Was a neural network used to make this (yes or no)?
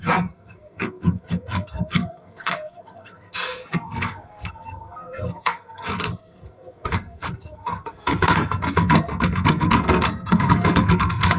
yes